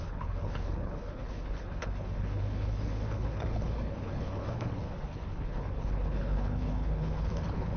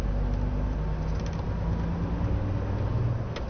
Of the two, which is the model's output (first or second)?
first